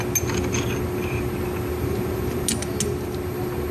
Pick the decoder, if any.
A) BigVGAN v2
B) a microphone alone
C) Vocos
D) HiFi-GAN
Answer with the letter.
B